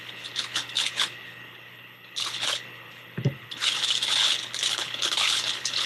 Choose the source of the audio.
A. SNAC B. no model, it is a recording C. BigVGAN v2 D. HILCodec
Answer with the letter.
D